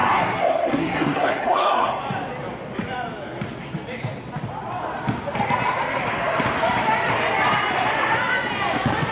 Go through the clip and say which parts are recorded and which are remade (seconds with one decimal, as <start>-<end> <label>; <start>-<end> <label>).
0.0-1.9 remade; 1.9-9.1 recorded